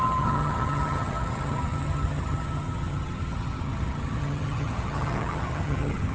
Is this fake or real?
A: fake